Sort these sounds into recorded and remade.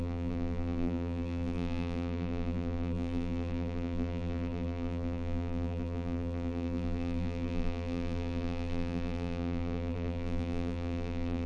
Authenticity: remade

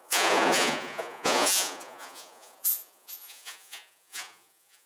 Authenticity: remade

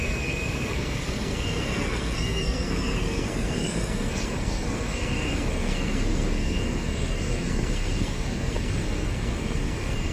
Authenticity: remade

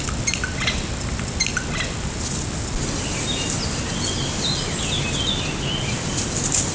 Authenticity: recorded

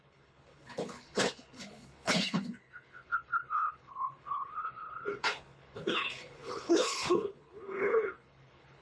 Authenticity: remade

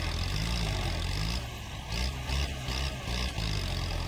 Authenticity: recorded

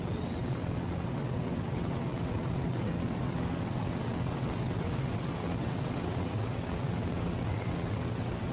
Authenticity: remade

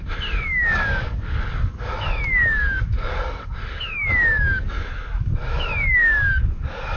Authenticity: remade